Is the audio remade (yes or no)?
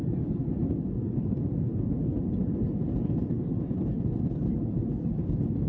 no